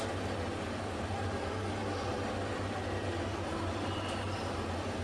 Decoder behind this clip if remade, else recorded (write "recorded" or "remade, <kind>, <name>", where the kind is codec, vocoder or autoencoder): recorded